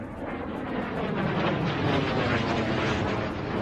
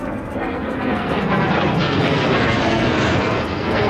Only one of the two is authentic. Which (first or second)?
first